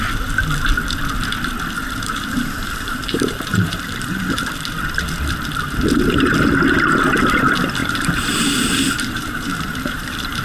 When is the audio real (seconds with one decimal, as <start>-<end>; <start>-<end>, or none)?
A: 0.0-1.8; 4.2-7.8

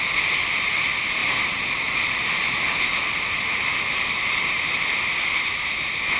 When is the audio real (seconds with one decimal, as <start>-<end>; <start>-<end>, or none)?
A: 0.0-6.2

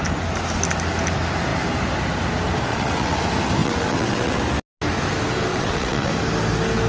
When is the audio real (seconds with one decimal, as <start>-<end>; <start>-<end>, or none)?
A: 0.0-2.7; 3.2-3.6; 4.4-5.5; 6.1-6.9